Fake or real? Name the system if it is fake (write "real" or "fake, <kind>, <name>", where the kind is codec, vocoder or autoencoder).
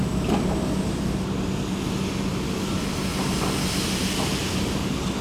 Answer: real